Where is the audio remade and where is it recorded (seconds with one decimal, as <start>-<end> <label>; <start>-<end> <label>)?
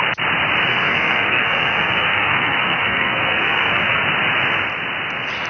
0.0-0.7 recorded; 0.7-4.0 remade; 4.0-5.5 recorded